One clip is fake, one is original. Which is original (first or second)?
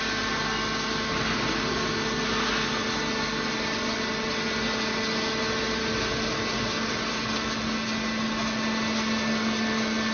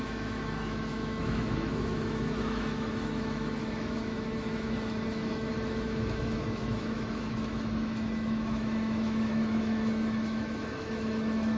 first